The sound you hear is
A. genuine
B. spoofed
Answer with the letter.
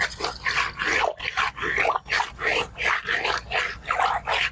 A